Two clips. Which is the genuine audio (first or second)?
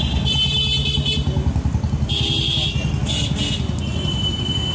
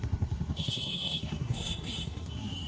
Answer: first